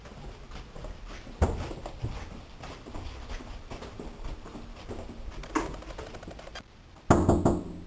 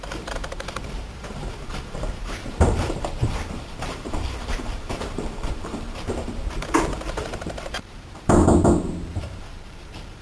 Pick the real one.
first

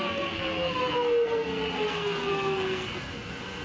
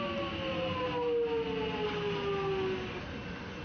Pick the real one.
second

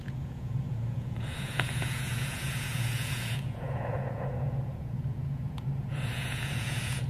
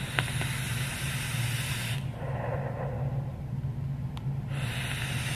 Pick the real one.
second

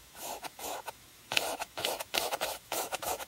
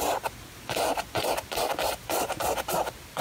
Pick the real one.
second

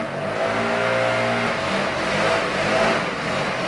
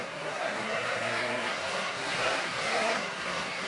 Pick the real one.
first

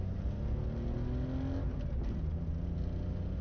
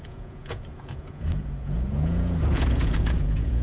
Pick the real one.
first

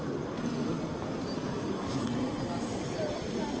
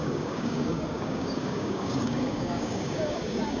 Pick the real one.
first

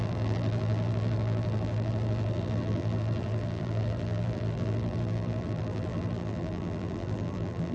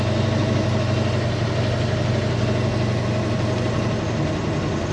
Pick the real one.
second